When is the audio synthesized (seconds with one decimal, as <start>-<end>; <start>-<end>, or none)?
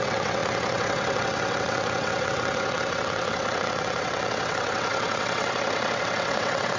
0.0-6.8